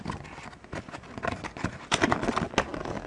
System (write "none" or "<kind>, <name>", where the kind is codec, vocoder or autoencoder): none